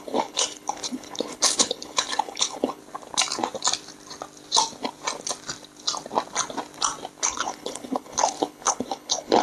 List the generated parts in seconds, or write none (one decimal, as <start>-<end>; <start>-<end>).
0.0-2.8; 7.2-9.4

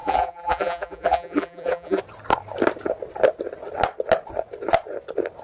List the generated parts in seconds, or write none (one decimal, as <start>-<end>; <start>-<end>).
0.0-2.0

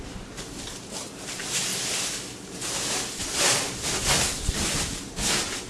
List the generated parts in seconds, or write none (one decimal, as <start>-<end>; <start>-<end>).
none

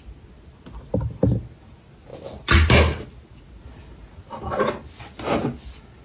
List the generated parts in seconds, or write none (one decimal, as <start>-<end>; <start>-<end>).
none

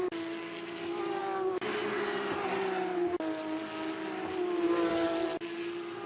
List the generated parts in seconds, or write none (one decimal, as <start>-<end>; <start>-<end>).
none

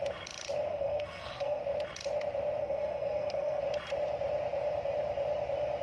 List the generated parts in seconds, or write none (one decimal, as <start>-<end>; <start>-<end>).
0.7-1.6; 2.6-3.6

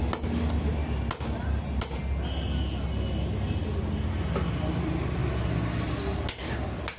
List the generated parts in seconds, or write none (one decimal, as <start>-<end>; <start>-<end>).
none